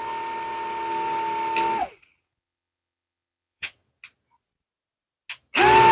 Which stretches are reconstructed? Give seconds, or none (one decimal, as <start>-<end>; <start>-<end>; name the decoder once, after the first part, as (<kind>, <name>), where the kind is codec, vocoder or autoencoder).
1.8-3.9 (vocoder, WaveNeXt)

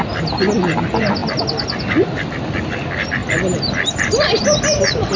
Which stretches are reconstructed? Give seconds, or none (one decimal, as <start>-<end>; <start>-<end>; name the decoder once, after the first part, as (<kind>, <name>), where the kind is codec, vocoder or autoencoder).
none

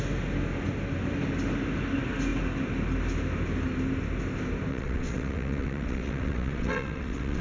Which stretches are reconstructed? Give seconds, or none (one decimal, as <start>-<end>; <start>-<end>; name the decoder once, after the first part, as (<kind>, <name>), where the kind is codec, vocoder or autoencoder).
4.7-7.4 (vocoder, WaveNeXt)

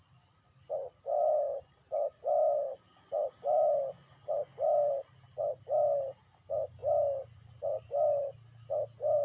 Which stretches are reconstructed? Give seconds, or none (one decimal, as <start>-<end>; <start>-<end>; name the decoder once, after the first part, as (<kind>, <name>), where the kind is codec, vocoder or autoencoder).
none

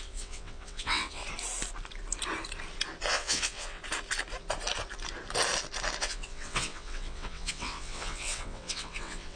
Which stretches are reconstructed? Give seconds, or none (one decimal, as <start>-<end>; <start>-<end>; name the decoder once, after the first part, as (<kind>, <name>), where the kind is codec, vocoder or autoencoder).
0.0-1.2 (vocoder, WaveNeXt); 3.1-3.8; 6.0-9.4

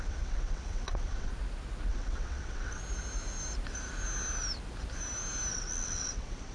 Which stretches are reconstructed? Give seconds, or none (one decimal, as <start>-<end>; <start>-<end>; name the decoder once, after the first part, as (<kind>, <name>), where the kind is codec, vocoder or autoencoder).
0.0-1.3 (vocoder, WaveNeXt); 1.9-2.8; 5.5-6.5

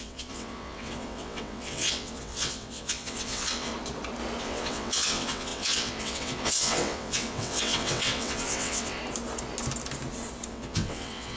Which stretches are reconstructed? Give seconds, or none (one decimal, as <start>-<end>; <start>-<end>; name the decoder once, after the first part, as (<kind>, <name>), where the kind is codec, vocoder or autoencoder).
0.0-3.7 (vocoder, WaveNeXt); 4.4-9.0; 10.5-11.4